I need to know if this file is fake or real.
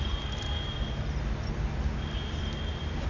real